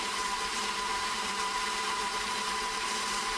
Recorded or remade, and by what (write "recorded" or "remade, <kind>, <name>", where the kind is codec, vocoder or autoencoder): remade, vocoder, BigVGAN v2